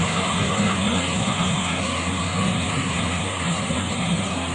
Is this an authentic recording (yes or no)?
no